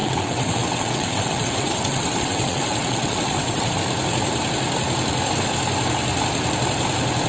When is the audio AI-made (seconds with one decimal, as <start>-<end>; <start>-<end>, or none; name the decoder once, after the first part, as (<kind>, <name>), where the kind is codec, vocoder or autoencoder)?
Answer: 0.0-3.7 (vocoder, WaveNeXt)